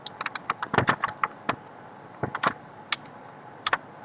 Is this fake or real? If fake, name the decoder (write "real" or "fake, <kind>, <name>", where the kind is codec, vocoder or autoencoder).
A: real